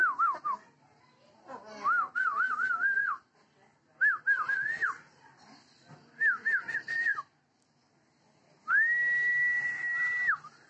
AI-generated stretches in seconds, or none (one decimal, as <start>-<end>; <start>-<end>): none